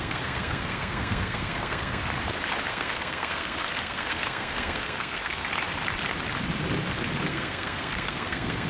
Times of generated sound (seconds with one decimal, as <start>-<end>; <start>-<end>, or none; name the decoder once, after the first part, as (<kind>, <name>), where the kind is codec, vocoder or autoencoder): 0.0-2.0 (codec, SNAC); 2.7-5.5; 7.3-8.7